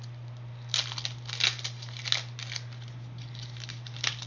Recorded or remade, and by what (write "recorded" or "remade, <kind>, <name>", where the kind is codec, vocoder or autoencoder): recorded